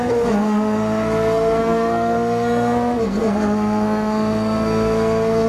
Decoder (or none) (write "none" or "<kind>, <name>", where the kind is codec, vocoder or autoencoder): codec, SNAC